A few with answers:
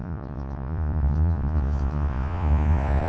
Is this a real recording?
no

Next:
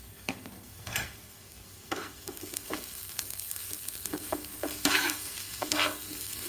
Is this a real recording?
no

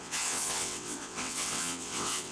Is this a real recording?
no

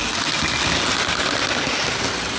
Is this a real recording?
yes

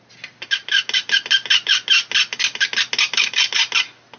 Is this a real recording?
yes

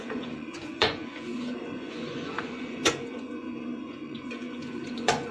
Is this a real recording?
no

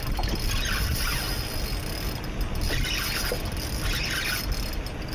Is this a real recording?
yes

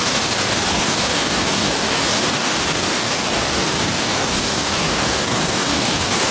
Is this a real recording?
no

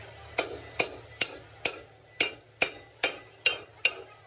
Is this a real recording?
yes